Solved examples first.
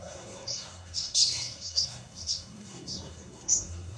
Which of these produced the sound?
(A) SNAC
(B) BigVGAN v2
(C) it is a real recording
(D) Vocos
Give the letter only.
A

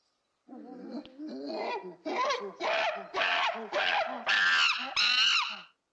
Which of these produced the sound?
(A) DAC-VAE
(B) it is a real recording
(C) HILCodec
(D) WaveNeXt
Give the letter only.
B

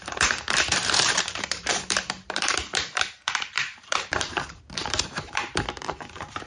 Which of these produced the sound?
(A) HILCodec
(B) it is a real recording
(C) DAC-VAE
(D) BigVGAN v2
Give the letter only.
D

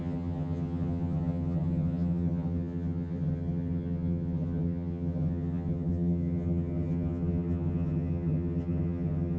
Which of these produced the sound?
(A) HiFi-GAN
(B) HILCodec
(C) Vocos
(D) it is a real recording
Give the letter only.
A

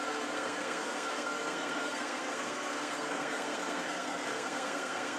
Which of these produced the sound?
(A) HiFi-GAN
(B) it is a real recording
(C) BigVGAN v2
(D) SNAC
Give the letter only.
D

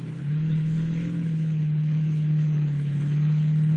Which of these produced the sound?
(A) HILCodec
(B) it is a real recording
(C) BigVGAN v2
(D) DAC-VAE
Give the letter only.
A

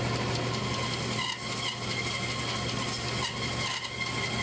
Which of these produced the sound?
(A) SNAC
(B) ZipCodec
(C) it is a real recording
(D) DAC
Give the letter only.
C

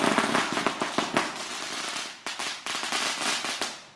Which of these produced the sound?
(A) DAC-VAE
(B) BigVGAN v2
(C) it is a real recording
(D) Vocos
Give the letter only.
C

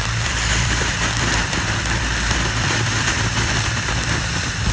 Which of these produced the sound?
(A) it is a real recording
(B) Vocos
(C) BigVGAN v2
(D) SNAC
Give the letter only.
C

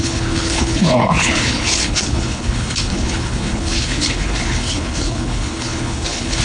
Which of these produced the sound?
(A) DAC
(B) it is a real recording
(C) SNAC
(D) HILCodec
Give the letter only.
D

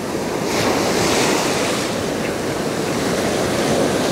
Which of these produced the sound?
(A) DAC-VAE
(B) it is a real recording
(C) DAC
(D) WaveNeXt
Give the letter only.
B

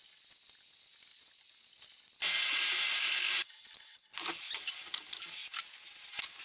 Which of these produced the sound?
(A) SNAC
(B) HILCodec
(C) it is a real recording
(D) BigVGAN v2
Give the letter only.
C